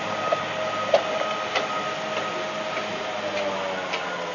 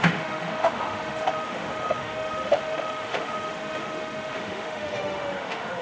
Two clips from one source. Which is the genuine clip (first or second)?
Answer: first